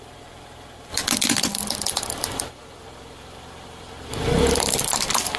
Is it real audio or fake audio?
fake